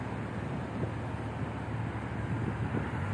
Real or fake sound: real